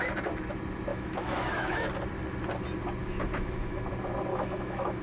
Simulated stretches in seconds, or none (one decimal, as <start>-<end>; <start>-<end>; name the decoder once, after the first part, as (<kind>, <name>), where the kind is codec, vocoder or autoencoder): 0.9-1.9 (autoencoder, DAC-VAE); 3.0-3.8; 4.3-5.0